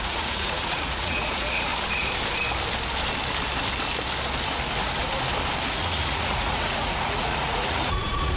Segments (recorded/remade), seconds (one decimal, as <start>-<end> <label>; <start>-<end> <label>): 0.0-1.7 remade; 1.7-5.7 recorded; 5.7-8.4 remade